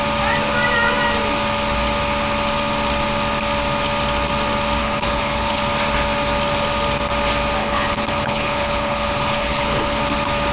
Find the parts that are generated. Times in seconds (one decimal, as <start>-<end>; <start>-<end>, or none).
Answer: 4.8-5.6; 7.6-10.0